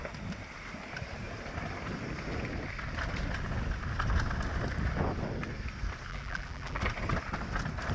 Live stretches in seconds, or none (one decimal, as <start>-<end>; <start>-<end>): 0.0-6.1; 6.8-7.9